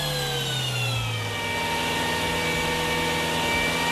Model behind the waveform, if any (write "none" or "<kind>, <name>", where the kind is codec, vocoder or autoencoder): none